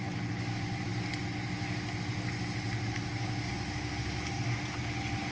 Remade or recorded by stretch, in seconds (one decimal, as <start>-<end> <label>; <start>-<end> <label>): 0.0-5.3 recorded